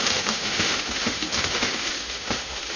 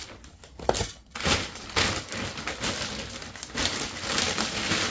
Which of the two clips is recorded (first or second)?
second